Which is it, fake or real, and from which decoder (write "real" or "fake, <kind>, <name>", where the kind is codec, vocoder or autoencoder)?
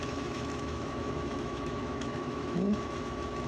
fake, autoencoder, DAC-VAE